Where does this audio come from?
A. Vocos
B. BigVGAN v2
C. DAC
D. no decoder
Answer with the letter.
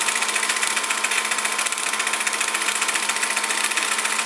D